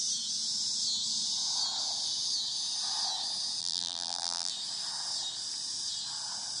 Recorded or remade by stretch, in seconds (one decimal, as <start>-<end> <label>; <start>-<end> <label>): 0.0-3.6 recorded; 3.6-4.5 remade; 4.5-6.6 recorded